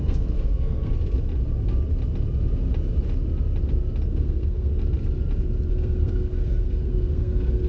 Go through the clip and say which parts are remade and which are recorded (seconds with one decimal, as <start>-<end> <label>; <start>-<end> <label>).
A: 0.0-0.9 remade; 0.9-4.1 recorded; 4.1-4.7 remade; 4.7-5.7 recorded; 5.7-7.7 remade